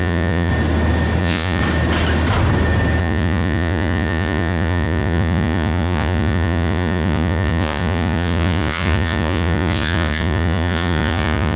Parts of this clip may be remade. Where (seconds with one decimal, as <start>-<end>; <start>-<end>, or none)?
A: 0.0-0.5; 1.2-1.6; 3.0-11.6